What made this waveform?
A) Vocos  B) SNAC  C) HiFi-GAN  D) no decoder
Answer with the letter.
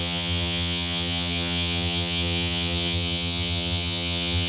C